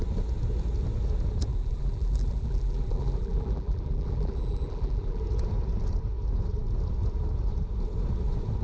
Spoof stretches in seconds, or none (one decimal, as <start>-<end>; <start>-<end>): 1.5-5.2